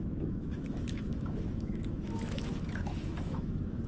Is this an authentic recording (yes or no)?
no